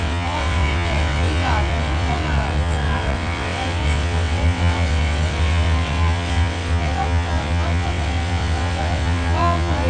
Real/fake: fake